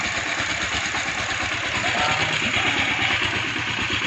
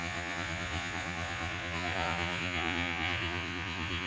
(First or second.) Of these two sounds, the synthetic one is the second